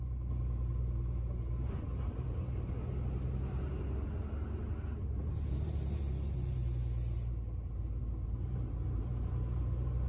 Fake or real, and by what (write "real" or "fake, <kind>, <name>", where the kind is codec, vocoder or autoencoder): real